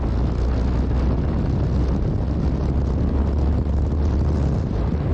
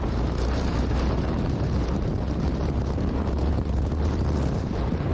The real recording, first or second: first